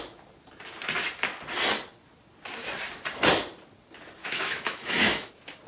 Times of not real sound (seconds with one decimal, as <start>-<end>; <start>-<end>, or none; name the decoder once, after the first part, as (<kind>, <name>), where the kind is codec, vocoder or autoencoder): 4.2-5.3 (autoencoder, DAC-VAE)